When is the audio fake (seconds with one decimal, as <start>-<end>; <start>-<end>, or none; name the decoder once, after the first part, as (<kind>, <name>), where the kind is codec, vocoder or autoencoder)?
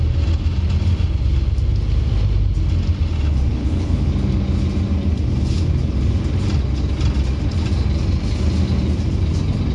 3.5-4.1 (codec, HILCodec)